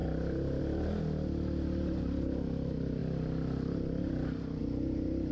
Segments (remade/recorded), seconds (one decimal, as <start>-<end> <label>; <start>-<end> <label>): 0.0-5.3 recorded